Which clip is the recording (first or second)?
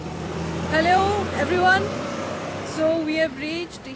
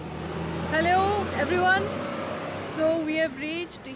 second